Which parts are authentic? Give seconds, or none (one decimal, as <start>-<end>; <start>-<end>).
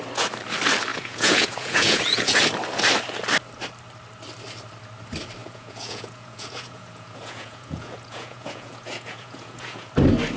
0.0-0.9; 2.4-5.4; 9.9-10.4